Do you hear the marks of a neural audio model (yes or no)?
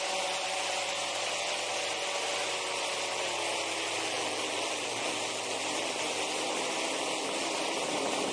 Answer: no